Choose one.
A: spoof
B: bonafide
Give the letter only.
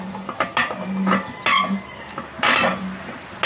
B